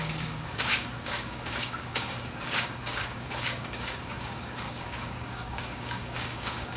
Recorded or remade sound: remade